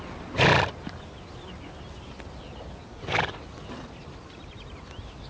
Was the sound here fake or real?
real